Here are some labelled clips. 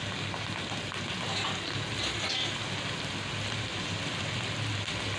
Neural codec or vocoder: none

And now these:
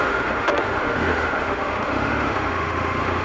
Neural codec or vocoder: autoencoder, DAC-VAE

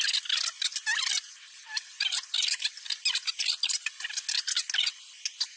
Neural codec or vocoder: none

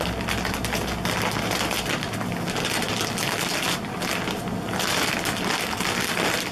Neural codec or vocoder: none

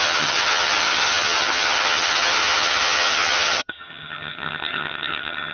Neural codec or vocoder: vocoder, HiFi-GAN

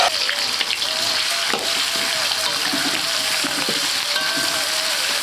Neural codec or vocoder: none